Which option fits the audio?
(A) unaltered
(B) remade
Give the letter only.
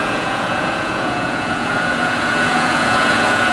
B